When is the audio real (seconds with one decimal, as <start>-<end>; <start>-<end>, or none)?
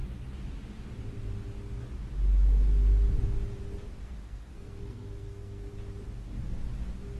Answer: 0.0-4.0; 5.7-7.2